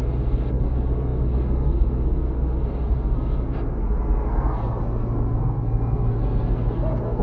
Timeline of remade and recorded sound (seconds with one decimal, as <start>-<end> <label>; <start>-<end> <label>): 0.0-7.2 remade